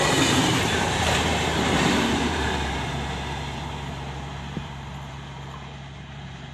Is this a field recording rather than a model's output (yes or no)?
no